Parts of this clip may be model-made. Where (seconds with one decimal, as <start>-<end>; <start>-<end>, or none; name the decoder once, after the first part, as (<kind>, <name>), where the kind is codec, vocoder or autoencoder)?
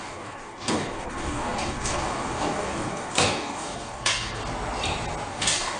0.0-4.4 (codec, DAC); 5.3-5.8